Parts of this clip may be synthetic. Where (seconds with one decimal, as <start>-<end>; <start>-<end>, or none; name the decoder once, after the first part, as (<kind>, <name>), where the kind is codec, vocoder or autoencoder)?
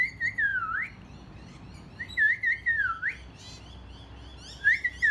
none